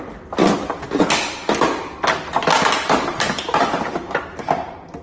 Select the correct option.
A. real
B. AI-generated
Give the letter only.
A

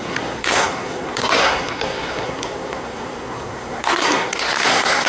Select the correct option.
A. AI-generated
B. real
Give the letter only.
A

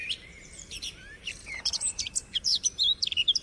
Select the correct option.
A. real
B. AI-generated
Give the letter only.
B